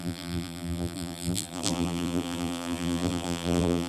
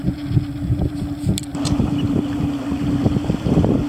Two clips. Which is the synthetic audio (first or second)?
first